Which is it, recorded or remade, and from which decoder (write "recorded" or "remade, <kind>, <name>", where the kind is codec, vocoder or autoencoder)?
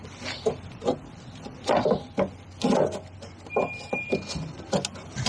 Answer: recorded